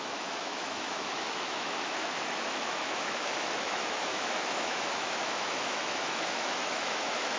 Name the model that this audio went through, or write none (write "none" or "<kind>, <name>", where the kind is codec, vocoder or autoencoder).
autoencoder, DAC-VAE